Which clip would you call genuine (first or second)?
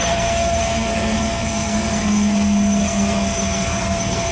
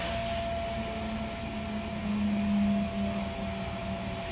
second